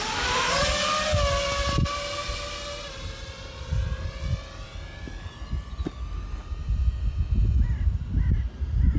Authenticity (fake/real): real